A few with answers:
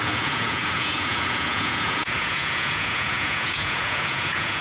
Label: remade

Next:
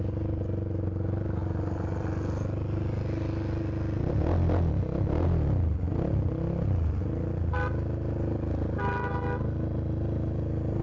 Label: recorded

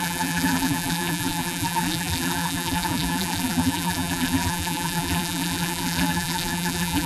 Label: remade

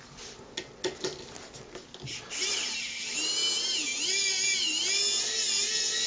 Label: recorded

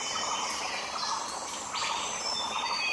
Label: recorded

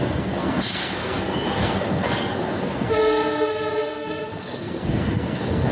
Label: remade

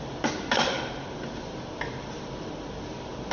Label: recorded